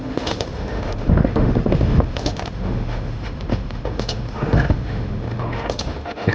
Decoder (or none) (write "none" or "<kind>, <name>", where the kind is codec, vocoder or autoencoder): autoencoder, DAC-VAE